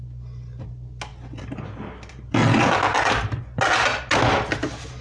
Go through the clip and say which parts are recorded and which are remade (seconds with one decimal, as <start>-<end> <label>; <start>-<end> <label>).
0.0-5.0 recorded